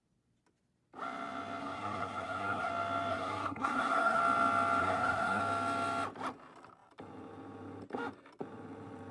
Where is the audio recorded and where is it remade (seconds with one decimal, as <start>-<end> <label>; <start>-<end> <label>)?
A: 0.0-1.6 recorded; 1.6-2.7 remade; 2.7-3.1 recorded; 3.1-4.2 remade; 4.2-4.8 recorded; 4.8-5.4 remade; 5.4-9.1 recorded